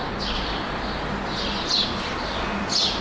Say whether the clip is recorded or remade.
recorded